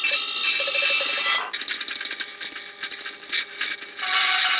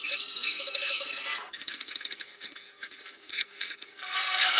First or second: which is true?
first